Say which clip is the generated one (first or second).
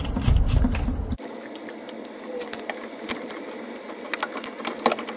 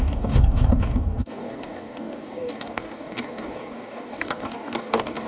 second